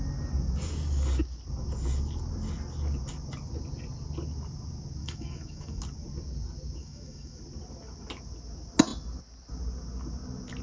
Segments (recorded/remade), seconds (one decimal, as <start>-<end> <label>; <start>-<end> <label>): 0.0-5.0 recorded; 5.0-5.8 remade; 5.8-6.8 recorded; 6.8-7.4 remade; 7.4-10.6 recorded